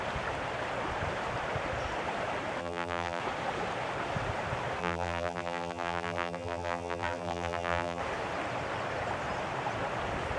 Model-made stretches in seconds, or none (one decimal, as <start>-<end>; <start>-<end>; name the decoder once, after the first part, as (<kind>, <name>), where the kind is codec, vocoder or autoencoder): 2.6-3.2 (vocoder, BigVGAN v2); 4.8-8.0

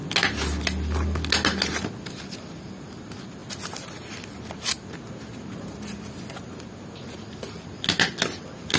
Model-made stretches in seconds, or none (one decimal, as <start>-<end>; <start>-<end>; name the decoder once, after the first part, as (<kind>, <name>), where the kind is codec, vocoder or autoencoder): none

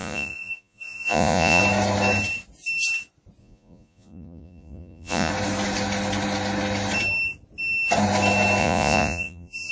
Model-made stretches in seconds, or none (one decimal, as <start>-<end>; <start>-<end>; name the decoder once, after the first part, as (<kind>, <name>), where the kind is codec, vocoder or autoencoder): 0.0-1.6 (vocoder, Vocos); 3.4-5.3; 8.6-9.7

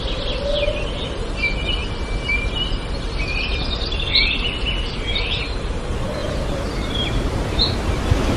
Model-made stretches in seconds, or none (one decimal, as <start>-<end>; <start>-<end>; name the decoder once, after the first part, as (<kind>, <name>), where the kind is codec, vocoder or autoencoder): 6.2-8.0 (vocoder, BigVGAN v2)

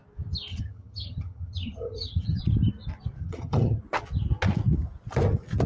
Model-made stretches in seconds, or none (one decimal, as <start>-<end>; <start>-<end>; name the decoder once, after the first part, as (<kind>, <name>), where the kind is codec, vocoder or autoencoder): 0.5-2.4 (vocoder, HiFi-GAN); 3.2-3.8

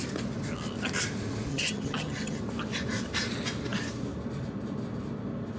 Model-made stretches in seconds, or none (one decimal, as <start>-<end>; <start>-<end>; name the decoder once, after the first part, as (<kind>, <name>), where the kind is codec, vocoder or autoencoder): 1.5-2.4 (vocoder, HiFi-GAN)

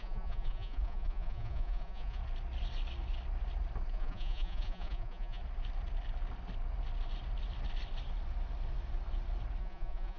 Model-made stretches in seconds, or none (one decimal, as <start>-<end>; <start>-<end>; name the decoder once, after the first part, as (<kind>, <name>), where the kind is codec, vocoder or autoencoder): 0.0-2.2 (vocoder, Vocos); 3.9-5.4; 9.6-10.2